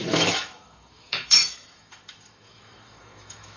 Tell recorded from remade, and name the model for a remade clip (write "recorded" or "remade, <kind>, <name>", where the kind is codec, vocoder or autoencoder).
remade, autoencoder, DAC-VAE